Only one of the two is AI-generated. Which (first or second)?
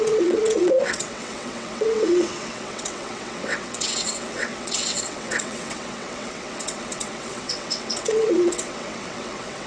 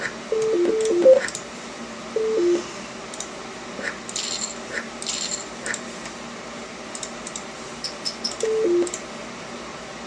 first